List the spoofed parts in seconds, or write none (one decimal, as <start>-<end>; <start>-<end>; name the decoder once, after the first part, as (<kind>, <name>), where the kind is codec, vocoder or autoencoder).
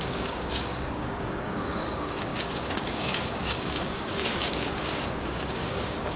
0.0-6.2 (codec, DAC)